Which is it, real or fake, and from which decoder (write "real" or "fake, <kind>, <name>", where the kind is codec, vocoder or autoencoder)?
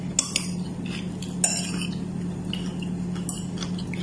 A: real